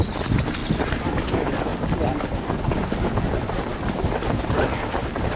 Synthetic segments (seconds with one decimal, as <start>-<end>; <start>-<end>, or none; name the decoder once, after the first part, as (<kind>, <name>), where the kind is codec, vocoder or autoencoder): 0.6-1.2 (vocoder, BigVGAN v2)